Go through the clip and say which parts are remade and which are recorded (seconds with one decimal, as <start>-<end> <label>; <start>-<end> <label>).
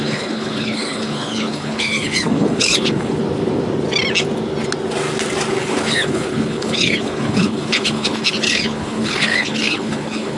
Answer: 0.0-3.2 remade; 3.2-5.5 recorded; 5.5-10.4 remade